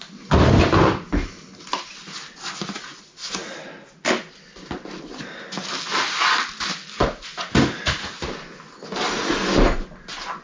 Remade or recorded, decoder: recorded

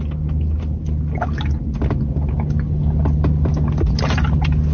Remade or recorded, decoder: recorded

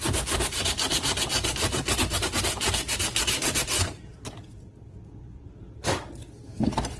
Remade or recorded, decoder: recorded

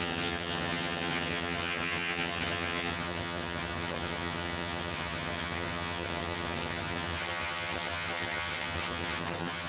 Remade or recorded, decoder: remade, vocoder, HiFi-GAN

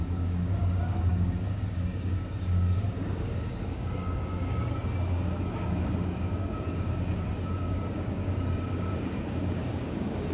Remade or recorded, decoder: remade, codec, DAC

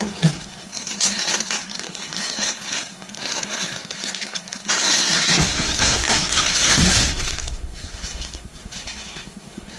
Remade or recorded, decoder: remade, codec, SNAC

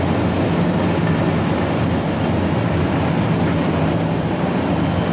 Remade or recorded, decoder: recorded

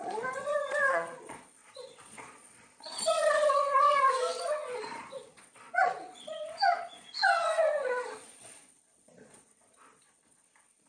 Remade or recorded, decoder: remade, vocoder, Vocos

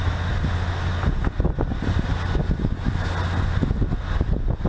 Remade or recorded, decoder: recorded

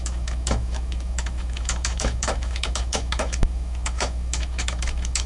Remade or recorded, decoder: remade, autoencoder, DAC-VAE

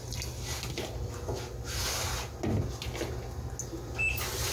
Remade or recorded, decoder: recorded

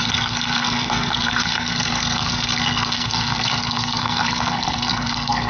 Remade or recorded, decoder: remade, codec, SNAC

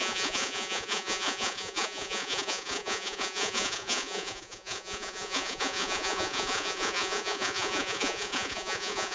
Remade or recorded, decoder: remade, vocoder, Vocos